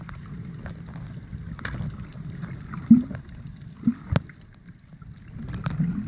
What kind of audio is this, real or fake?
real